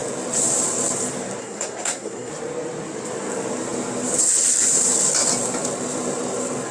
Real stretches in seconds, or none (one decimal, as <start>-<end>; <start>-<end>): 0.0-1.4; 2.3-6.7